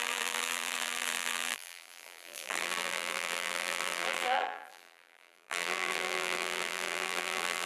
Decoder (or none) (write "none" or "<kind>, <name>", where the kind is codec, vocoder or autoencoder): vocoder, BigVGAN v2